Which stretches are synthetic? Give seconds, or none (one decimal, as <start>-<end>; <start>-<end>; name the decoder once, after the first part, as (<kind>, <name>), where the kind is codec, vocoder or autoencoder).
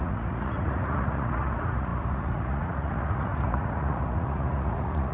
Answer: 0.0-5.1 (vocoder, Vocos)